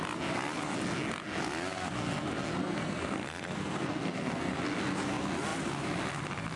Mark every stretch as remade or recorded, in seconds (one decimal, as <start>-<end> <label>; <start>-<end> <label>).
0.0-2.6 recorded; 2.6-4.5 remade; 4.5-6.6 recorded